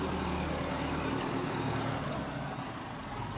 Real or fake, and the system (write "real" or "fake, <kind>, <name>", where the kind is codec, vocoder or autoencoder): real